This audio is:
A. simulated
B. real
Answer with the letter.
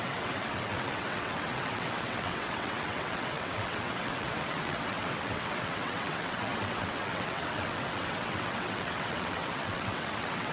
A